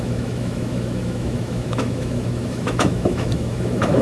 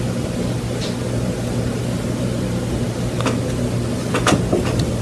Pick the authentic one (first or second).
second